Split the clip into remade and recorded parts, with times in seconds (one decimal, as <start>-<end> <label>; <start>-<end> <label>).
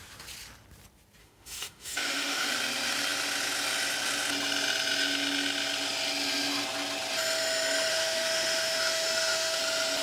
0.0-1.2 recorded; 1.2-2.5 remade; 2.5-7.9 recorded; 7.9-9.6 remade; 9.6-10.0 recorded